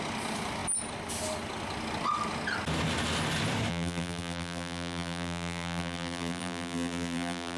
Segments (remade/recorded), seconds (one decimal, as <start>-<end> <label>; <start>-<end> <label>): 0.0-3.7 recorded; 3.7-7.6 remade